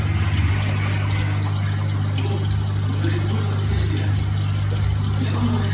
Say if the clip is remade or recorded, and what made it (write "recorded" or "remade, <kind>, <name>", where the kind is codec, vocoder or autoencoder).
recorded